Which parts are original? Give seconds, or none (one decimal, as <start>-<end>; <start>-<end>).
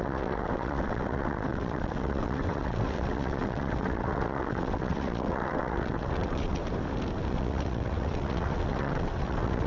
6.6-7.3